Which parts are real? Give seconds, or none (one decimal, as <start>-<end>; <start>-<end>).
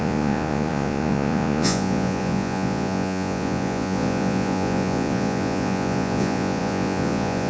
none